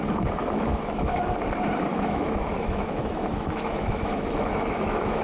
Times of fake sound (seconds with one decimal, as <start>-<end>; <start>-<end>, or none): 0.4-1.2; 1.9-5.2